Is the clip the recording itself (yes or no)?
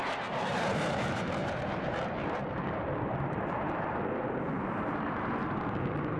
no